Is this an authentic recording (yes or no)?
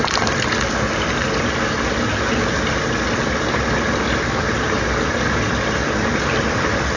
yes